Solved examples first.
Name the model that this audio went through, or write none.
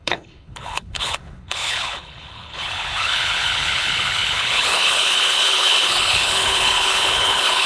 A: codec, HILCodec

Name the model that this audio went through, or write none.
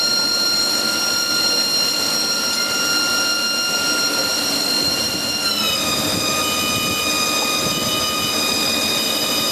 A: none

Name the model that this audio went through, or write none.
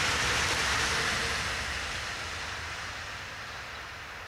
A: none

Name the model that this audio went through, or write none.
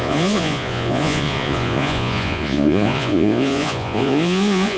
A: vocoder, Vocos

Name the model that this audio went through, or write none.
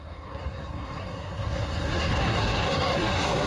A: codec, SNAC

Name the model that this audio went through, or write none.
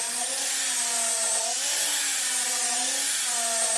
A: none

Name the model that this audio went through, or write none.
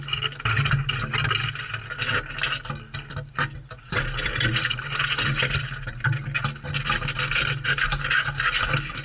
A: none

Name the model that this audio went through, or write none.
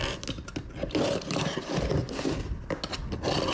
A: none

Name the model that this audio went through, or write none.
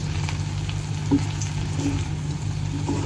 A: none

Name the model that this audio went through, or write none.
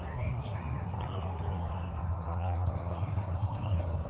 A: codec, SNAC